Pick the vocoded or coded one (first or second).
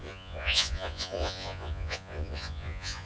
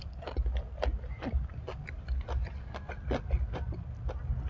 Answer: first